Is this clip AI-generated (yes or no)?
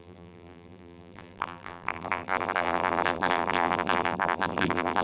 yes